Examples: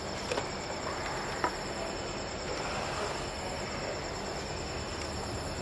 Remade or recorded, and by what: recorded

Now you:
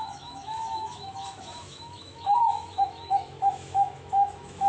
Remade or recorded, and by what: remade, autoencoder, DAC-VAE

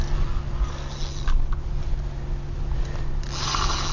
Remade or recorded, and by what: recorded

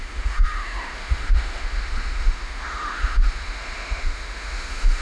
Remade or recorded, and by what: remade, autoencoder, DAC-VAE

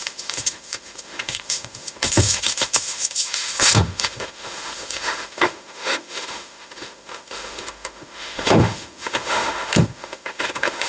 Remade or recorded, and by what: remade, autoencoder, DAC-VAE